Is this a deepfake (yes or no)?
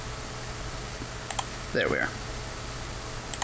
no